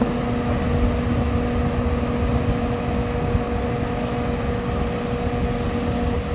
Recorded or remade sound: recorded